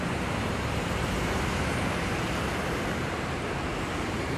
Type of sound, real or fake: fake